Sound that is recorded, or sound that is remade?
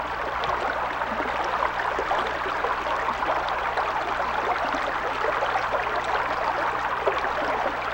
recorded